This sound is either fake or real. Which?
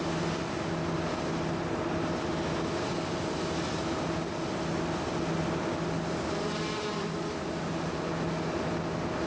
real